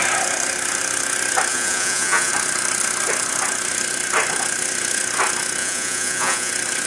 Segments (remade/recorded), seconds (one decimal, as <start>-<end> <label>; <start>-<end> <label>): 0.0-1.5 recorded; 1.5-2.3 remade; 2.3-5.6 recorded; 5.6-6.5 remade; 6.5-6.9 recorded